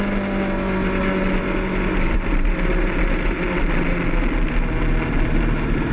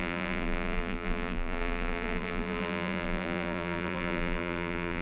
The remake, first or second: second